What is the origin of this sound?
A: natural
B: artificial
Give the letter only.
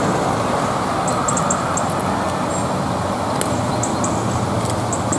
A